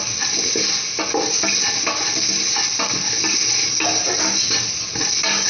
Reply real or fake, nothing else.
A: real